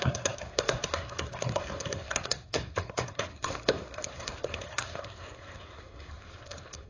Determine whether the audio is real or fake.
fake